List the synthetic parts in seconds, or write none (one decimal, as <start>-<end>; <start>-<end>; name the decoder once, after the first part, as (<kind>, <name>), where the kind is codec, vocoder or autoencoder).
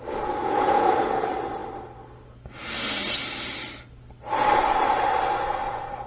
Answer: 0.4-1.2 (vocoder, Vocos)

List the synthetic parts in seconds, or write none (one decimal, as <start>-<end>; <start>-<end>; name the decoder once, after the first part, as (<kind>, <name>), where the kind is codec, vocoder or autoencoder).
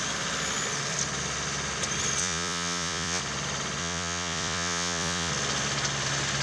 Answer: 2.2-3.2 (vocoder, Vocos); 3.8-5.3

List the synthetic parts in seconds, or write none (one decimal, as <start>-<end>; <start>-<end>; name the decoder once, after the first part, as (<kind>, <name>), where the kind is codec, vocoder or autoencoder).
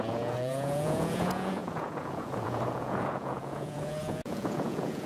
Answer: 0.0-5.1 (vocoder, Vocos)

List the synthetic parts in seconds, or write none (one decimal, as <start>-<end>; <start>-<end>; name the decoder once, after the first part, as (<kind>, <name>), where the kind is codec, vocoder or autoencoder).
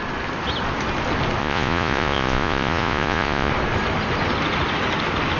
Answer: 1.4-3.5 (vocoder, Vocos)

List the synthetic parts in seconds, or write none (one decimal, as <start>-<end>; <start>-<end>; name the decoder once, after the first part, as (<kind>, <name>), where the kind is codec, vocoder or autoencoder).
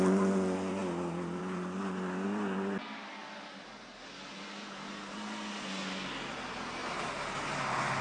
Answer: none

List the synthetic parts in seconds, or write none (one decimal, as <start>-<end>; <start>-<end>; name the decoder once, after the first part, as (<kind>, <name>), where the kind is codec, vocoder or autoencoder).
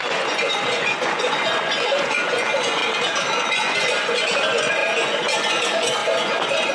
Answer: 0.0-2.8 (vocoder, Vocos); 3.5-6.7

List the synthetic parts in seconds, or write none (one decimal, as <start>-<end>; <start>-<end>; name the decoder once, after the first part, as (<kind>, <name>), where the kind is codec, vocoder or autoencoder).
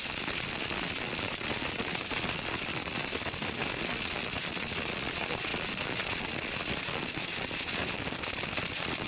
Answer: 0.0-3.1 (vocoder, Vocos); 3.8-7.8; 8.6-9.1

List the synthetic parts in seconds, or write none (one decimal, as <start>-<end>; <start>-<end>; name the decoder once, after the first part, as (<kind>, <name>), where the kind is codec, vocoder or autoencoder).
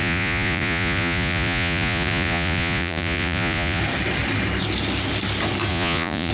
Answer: 0.0-3.8 (vocoder, Vocos); 5.7-6.3